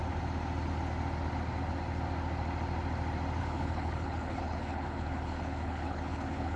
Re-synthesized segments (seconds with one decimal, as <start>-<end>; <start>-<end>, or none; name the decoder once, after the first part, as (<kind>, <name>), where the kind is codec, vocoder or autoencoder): 3.4-6.6 (codec, HILCodec)